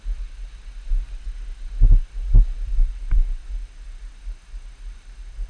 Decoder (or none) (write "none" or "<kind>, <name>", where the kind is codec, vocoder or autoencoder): none